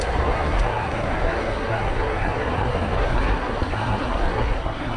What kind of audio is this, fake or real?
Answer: fake